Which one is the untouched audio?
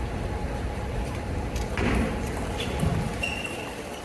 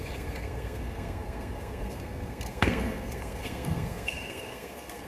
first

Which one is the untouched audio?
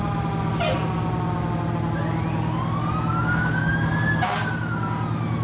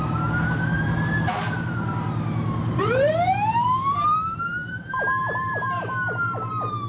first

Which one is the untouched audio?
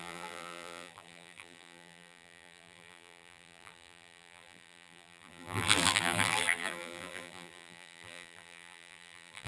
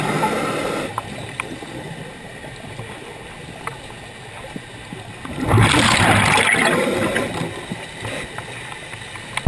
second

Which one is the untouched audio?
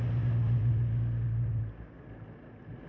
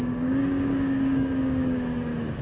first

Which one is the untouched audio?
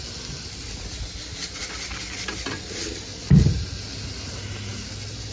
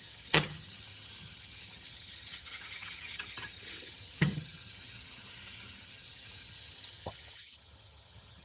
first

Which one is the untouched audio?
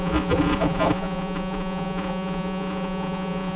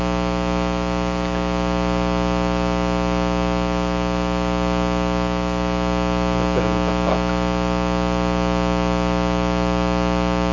second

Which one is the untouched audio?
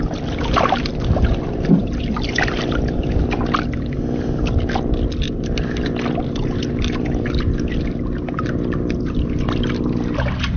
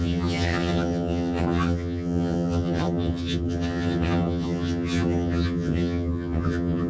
first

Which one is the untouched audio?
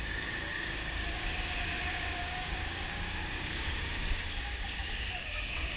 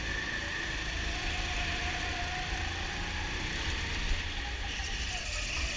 second